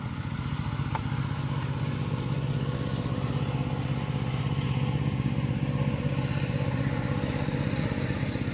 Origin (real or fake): real